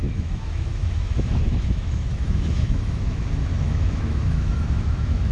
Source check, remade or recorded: remade